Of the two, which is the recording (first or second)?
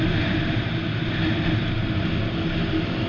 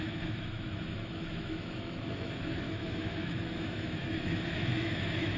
first